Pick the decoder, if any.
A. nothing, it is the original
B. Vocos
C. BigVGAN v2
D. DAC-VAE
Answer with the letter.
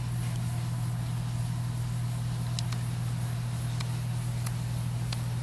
A